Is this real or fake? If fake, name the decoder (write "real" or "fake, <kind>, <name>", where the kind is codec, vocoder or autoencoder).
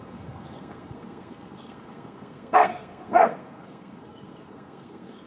fake, codec, SNAC